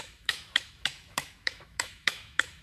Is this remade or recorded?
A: remade